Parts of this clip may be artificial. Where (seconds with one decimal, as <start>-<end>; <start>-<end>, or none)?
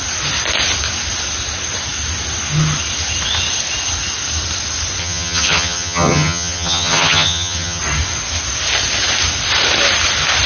5.0-7.8